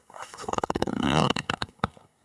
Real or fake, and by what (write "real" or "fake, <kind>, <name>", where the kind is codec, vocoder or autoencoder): fake, codec, SNAC